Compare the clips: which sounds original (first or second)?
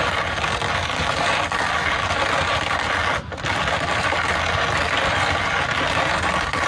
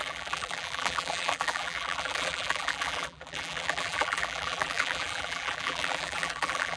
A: first